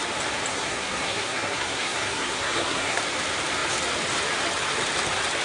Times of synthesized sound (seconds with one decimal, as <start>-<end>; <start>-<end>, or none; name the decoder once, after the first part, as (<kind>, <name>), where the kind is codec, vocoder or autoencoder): 0.5-3.0 (codec, SNAC)